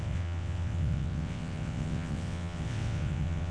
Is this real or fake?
fake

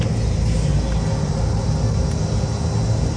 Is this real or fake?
real